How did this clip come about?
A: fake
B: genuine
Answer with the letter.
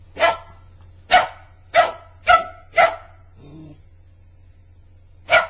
B